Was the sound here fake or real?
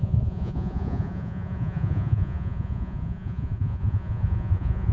fake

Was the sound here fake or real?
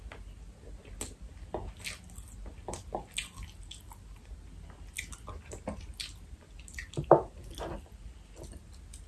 real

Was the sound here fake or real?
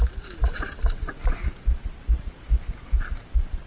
real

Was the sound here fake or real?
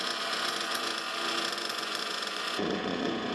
fake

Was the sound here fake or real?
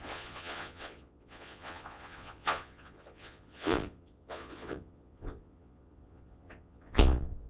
fake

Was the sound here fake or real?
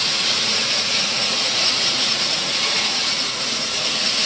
fake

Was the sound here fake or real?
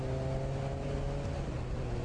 real